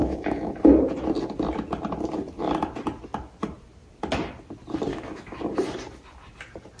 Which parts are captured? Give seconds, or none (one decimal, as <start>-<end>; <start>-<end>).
0.5-4.9; 5.4-6.8

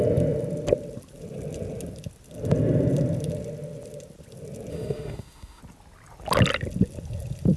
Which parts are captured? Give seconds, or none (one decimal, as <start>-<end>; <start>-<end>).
0.0-4.7; 5.6-7.6

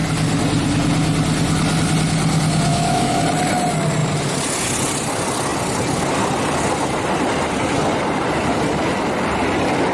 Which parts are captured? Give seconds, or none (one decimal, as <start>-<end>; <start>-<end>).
0.0-2.7; 3.2-9.9

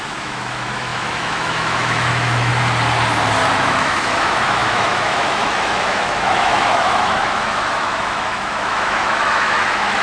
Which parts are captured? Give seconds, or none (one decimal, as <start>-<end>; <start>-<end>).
2.5-3.6